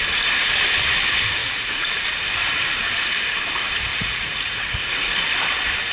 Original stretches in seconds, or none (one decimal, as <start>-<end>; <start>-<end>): 0.0-1.4; 1.9-3.9; 5.1-5.9